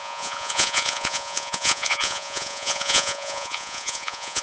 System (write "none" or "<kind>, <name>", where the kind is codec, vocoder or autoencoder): vocoder, Vocos